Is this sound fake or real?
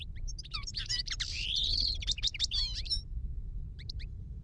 fake